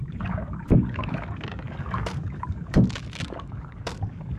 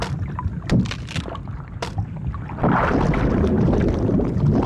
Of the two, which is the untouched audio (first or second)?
second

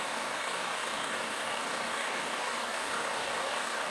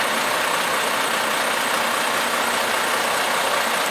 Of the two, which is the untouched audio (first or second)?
second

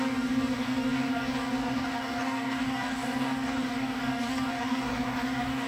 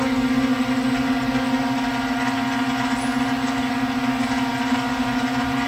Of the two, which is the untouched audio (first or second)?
second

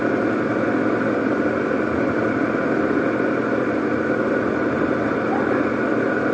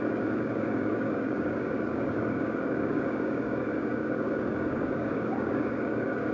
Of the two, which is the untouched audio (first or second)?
first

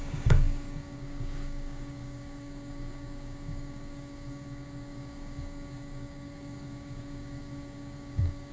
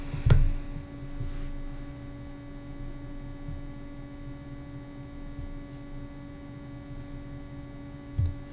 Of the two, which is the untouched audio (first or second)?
second